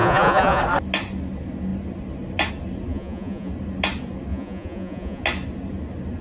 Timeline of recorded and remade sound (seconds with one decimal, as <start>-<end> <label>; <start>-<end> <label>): 0.0-0.6 remade; 0.6-2.9 recorded; 2.9-3.5 remade; 3.5-4.3 recorded; 4.3-5.2 remade; 5.2-6.2 recorded